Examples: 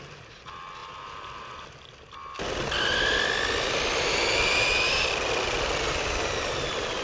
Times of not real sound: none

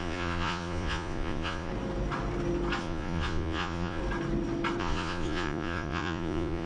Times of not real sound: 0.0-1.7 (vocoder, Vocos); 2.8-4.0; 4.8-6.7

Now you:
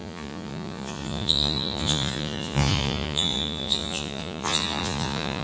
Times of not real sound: 0.0-5.4 (vocoder, Vocos)